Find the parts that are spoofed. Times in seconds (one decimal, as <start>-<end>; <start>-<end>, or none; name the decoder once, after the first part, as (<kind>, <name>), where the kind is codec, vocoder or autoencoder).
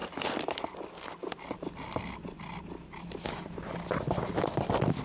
none